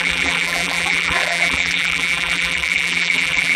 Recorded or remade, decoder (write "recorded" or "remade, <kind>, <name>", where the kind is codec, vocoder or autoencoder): remade, vocoder, BigVGAN v2